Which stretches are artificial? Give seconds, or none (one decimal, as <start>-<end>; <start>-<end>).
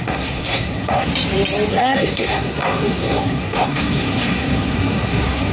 0.0-1.1; 1.7-5.5